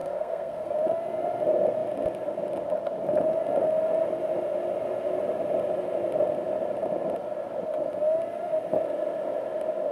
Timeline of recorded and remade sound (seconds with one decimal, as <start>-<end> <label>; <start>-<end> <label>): 0.0-0.7 remade; 0.7-9.9 recorded